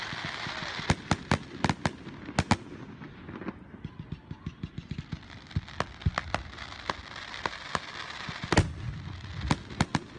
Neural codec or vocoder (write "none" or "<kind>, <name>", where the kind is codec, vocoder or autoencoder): none